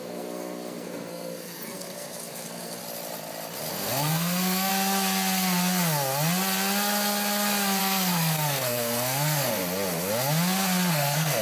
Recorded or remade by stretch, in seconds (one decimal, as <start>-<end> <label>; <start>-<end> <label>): 0.0-2.8 remade; 2.8-3.7 recorded; 3.7-4.7 remade; 4.7-7.8 recorded; 7.8-9.6 remade; 9.6-10.9 recorded; 10.9-11.4 remade